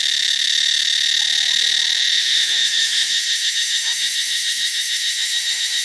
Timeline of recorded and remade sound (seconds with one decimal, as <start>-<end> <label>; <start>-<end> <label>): 0.0-2.2 recorded; 2.2-5.8 remade